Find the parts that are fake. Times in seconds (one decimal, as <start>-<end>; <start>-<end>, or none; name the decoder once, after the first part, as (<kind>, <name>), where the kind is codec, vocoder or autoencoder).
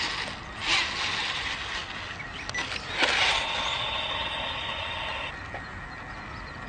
none